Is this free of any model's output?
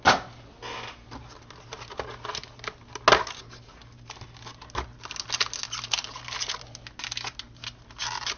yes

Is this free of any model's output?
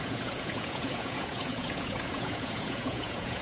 no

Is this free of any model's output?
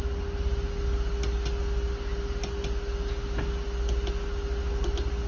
yes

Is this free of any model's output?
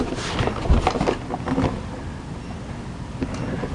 yes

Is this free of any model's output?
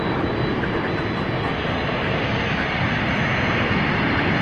yes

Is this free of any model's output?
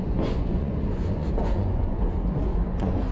no